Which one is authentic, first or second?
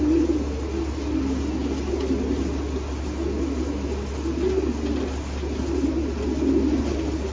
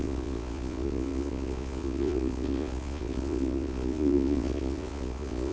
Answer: first